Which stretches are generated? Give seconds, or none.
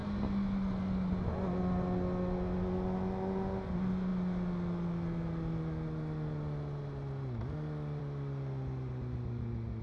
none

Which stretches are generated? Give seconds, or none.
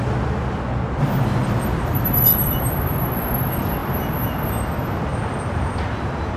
1.3-2.9 (vocoder, BigVGAN v2); 3.8-4.6; 5.1-6.4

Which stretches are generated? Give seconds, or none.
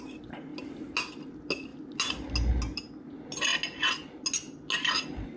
none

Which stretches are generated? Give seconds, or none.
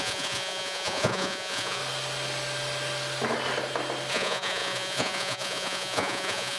0.0-1.8 (vocoder, Vocos); 4.1-6.6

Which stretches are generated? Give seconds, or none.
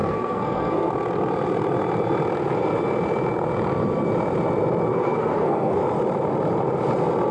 0.0-0.9 (codec, SNAC); 4.9-5.8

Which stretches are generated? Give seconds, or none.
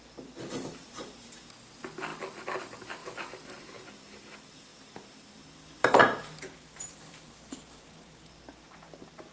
4.7-8.1 (vocoder, BigVGAN v2)